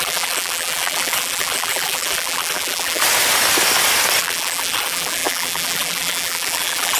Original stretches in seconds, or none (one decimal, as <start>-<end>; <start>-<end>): 3.0-4.2